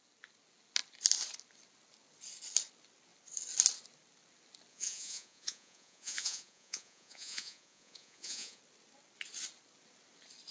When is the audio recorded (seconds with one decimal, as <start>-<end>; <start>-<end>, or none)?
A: 0.0-4.7; 8.6-10.5